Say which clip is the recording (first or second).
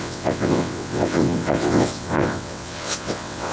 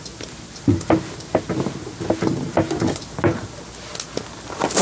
second